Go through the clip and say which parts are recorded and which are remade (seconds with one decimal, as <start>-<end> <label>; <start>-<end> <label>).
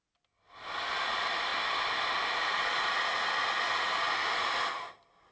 0.0-5.3 recorded